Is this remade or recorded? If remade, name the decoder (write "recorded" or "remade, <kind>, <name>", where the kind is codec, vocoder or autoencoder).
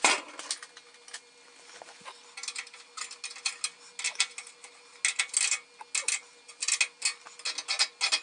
recorded